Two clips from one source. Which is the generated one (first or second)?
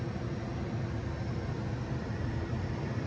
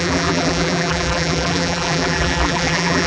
second